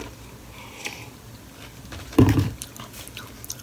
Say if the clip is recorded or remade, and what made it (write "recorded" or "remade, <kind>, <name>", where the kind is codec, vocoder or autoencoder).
remade, vocoder, BigVGAN v2